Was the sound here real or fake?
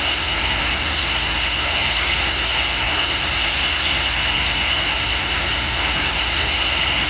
fake